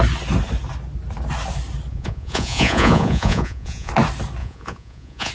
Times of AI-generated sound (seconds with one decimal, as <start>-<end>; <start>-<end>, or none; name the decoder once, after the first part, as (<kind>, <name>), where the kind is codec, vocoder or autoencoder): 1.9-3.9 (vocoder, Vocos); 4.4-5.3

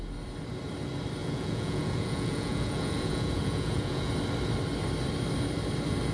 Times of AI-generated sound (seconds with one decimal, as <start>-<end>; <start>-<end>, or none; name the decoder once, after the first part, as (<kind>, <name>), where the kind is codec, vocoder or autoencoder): 1.2-4.1 (vocoder, Vocos)

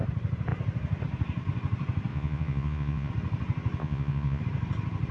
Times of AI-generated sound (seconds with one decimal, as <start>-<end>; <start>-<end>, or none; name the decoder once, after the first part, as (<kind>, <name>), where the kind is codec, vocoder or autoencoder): 2.1-3.1 (vocoder, Vocos); 3.8-4.4

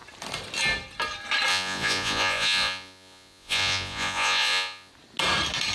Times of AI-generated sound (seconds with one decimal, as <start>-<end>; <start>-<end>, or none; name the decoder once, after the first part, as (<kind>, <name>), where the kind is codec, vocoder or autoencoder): 1.5-4.9 (vocoder, Vocos)

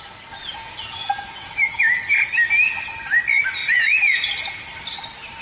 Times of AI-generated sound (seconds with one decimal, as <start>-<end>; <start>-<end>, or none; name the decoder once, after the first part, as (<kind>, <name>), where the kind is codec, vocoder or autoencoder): 0.4-1.8 (vocoder, Vocos); 3.6-4.6